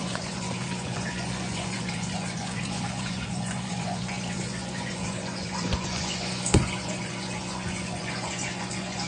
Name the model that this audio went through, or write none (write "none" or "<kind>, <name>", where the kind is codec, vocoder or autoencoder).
vocoder, Vocos